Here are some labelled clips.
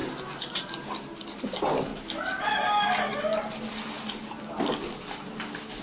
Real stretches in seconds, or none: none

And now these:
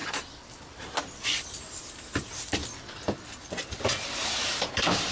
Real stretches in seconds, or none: 0.0-1.0; 2.6-4.5

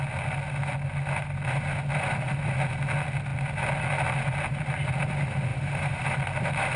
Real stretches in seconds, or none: 0.0-5.5; 6.1-6.8

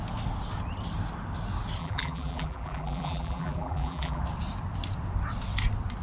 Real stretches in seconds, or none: 0.0-1.8; 4.2-6.0

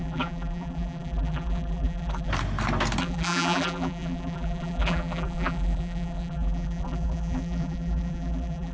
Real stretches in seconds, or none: 2.3-3.0

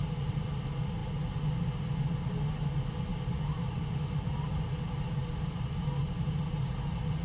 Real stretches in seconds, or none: 0.0-3.1; 4.8-7.2